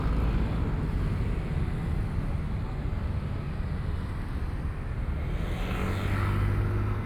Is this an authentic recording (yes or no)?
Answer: yes